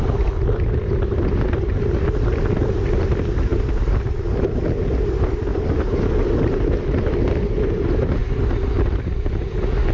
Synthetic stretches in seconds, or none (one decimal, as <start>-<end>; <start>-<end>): none

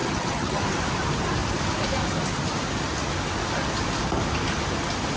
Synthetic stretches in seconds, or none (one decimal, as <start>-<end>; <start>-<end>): 0.0-0.6

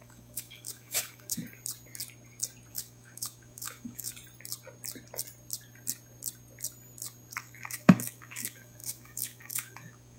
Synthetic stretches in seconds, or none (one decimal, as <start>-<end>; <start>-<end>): 0.0-1.4; 2.7-4.1; 7.4-10.2

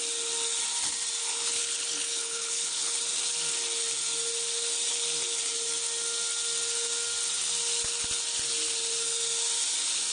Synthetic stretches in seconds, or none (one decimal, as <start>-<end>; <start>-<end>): 1.2-3.0

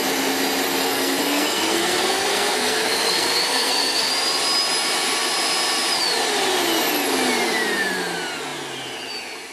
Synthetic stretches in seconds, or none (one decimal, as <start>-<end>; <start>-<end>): 0.8-4.1

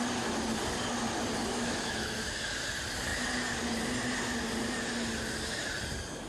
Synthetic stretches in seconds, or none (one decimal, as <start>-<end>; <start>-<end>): 1.5-2.2